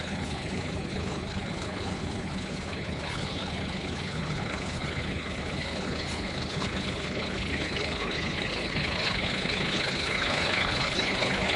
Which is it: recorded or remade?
remade